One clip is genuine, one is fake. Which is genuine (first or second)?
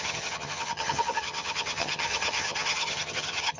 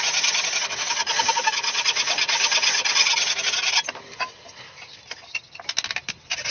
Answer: second